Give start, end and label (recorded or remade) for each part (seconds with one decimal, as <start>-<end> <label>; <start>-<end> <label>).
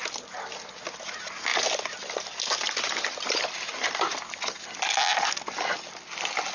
0.0-6.5 recorded